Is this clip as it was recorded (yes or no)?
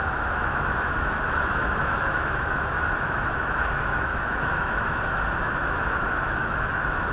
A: no